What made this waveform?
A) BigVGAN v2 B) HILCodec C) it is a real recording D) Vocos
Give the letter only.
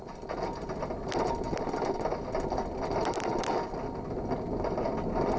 C